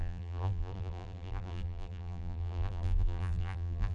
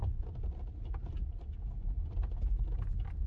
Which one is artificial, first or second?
first